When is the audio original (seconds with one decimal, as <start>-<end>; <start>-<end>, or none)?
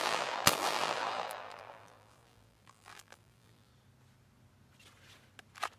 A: 3.7-5.8